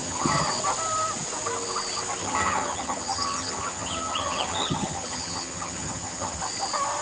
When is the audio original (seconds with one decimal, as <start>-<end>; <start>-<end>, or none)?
0.5-2.2; 6.4-7.0